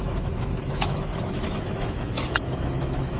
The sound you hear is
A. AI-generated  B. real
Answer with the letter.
A